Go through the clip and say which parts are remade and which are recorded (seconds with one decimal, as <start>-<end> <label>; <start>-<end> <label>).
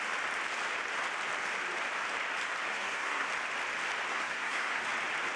0.0-2.7 recorded; 2.7-3.3 remade; 3.3-4.1 recorded; 4.1-4.8 remade; 4.8-5.4 recorded